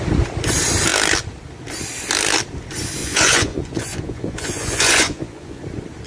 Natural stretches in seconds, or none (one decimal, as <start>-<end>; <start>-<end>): 0.0-3.0; 5.6-6.1